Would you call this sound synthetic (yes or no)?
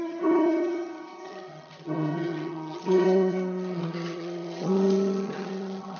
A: yes